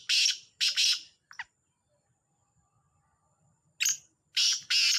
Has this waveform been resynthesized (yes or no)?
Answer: no